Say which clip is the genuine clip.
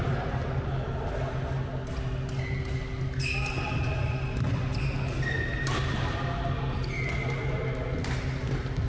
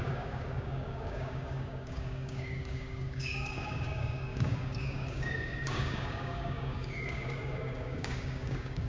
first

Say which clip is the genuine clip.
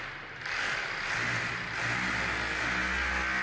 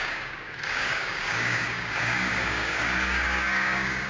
first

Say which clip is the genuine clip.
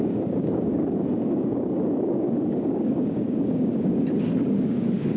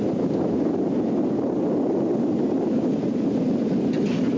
second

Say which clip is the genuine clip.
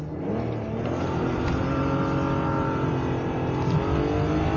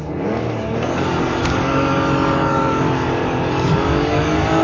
first